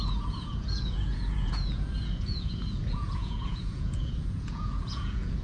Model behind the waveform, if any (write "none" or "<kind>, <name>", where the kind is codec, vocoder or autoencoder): vocoder, Vocos